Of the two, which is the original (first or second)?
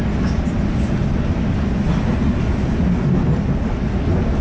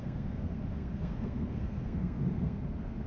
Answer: first